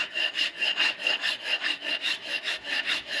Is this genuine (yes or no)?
no